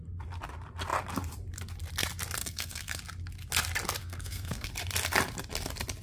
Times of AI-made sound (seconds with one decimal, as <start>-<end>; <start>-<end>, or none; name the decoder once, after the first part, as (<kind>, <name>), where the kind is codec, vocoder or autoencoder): 2.4-3.0 (codec, SNAC); 4.0-4.7